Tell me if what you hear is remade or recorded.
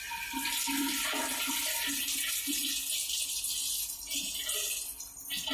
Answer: recorded